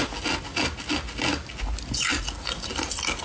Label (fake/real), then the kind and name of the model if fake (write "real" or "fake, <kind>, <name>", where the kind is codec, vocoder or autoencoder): real